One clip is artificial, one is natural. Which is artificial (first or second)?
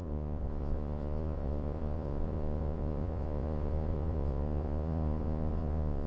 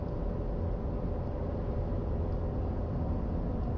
first